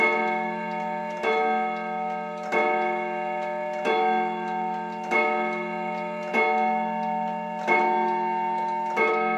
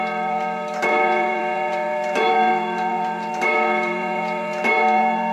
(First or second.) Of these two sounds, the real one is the first